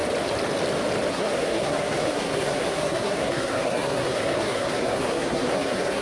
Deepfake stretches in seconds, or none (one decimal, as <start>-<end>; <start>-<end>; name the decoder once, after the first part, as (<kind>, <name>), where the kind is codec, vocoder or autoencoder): 1.1-6.0 (codec, SNAC)